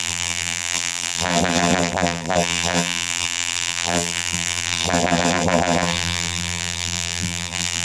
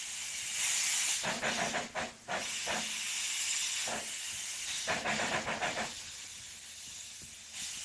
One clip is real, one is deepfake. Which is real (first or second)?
second